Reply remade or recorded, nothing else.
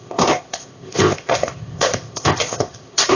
remade